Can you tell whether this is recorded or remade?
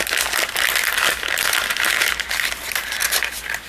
recorded